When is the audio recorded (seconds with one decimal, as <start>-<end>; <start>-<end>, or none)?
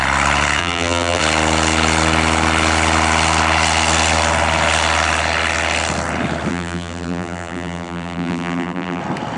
0.0-0.6; 1.2-6.5; 9.0-9.4